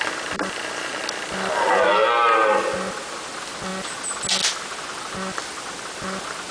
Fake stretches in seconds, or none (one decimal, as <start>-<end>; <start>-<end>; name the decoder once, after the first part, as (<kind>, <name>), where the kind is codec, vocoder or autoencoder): 0.0-1.0 (vocoder, BigVGAN v2)